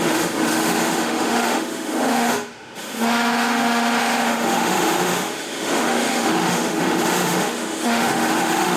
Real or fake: fake